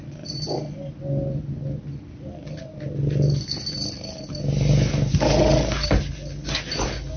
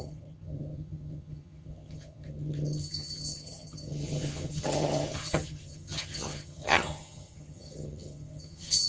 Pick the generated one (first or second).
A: second